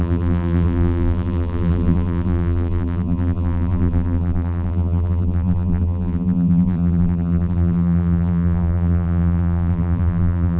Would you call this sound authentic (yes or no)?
no